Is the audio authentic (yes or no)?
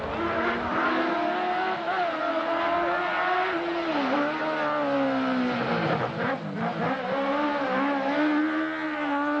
yes